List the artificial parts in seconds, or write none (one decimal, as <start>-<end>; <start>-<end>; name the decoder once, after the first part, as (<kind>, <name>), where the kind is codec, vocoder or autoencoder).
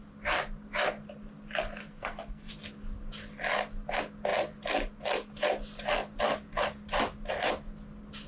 1.8-2.5 (codec, SNAC)